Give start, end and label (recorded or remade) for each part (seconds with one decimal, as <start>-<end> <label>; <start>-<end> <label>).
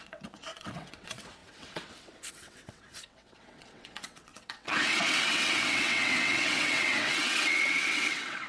0.0-8.5 remade